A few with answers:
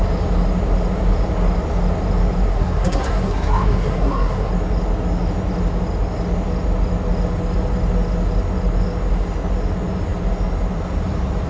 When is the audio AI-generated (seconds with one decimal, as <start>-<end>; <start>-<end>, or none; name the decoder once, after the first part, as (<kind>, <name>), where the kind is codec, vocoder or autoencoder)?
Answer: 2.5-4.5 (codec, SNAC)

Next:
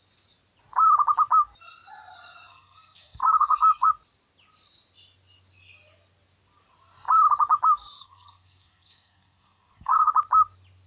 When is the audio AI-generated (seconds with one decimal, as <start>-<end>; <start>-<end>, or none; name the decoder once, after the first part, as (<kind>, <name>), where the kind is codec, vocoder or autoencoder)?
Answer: 2.5-3.9 (codec, SNAC); 8.0-10.1

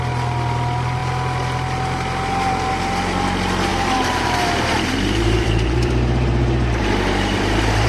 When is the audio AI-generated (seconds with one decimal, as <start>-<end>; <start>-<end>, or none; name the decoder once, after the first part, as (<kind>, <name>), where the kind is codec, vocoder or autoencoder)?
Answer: 3.7-7.9 (vocoder, BigVGAN v2)